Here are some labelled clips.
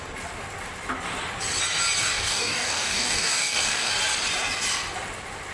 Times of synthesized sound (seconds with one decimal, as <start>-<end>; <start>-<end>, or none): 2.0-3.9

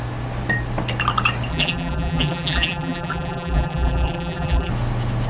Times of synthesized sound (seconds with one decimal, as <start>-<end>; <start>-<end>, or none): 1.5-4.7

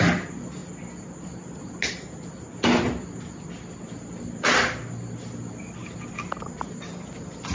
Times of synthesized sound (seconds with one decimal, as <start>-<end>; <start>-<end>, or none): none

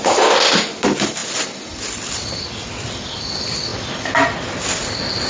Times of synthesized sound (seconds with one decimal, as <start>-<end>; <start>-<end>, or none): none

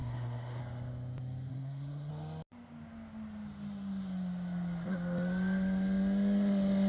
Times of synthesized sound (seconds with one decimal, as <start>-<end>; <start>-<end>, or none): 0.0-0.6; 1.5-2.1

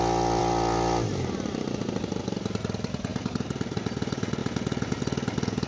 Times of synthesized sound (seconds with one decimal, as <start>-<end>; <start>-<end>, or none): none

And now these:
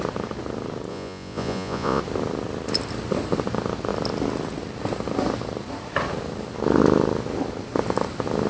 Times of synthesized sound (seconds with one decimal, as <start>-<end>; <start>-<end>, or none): 0.9-2.0